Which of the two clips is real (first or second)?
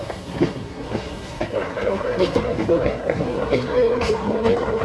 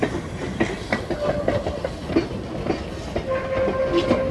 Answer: second